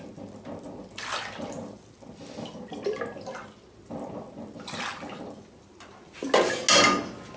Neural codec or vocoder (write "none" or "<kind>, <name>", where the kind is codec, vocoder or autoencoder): none